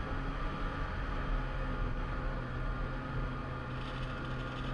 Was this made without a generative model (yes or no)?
yes